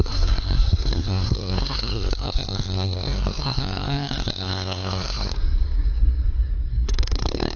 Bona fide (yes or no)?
no